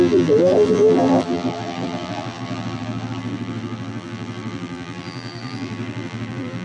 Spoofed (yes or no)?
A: yes